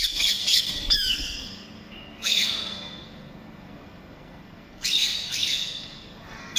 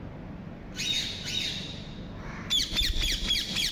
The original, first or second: second